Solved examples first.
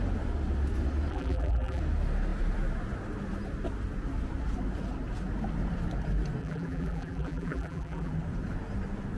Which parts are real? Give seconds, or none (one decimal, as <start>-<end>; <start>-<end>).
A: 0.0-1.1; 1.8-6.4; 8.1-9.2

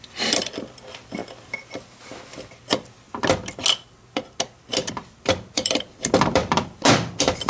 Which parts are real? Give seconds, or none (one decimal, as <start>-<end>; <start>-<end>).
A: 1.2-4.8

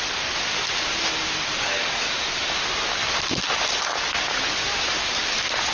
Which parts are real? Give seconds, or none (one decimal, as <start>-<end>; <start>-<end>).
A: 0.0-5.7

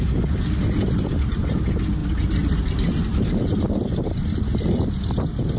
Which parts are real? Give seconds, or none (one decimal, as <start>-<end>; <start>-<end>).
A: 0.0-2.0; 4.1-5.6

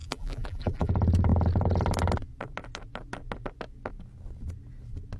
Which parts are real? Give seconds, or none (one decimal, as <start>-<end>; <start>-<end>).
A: 0.9-5.2

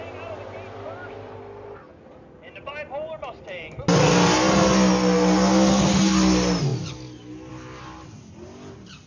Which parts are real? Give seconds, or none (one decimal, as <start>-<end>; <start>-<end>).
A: 0.0-9.1

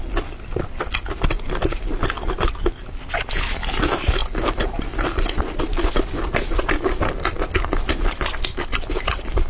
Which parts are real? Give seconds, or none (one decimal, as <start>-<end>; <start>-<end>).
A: 0.0-4.2; 5.4-8.5

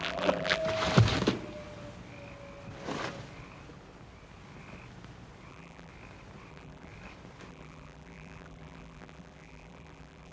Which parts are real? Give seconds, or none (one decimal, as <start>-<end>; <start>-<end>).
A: 0.6-5.5; 5.9-6.5; 6.9-7.5